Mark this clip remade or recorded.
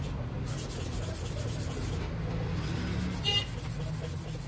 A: recorded